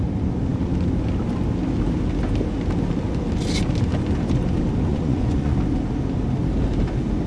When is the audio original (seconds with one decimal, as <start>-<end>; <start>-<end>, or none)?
0.0-4.9; 5.6-7.3